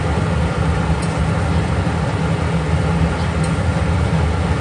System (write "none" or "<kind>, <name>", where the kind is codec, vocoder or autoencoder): none